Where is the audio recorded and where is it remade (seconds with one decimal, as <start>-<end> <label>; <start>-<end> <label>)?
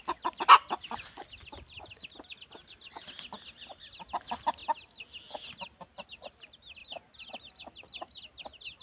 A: 0.0-8.8 recorded